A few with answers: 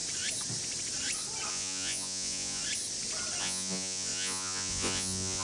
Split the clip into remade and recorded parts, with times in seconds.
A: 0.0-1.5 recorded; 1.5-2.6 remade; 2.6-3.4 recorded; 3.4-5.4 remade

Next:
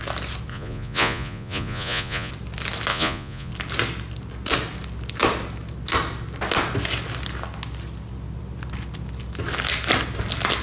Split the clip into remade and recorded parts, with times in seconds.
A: 0.0-0.5 recorded; 0.5-2.3 remade; 2.3-2.9 recorded; 2.9-3.5 remade; 3.5-10.6 recorded

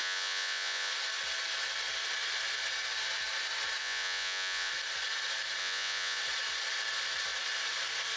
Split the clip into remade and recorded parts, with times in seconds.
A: 0.0-0.9 remade; 0.9-3.8 recorded; 3.8-4.7 remade; 4.7-5.6 recorded; 5.6-6.2 remade; 6.2-8.2 recorded

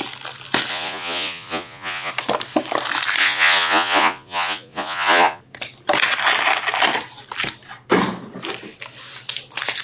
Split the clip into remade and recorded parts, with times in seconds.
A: 0.0-0.7 recorded; 0.7-2.1 remade; 2.1-3.2 recorded; 3.2-5.4 remade; 5.4-9.8 recorded

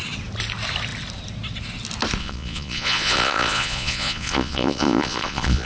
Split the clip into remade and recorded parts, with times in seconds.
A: 0.0-2.2 recorded; 2.2-5.7 remade